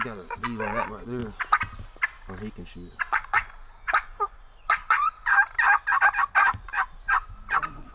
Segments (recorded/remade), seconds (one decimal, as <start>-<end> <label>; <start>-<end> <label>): 0.0-1.2 remade; 1.2-2.9 recorded; 2.9-5.3 remade; 5.3-6.4 recorded; 6.4-7.9 remade